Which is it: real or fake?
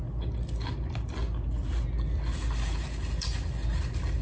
real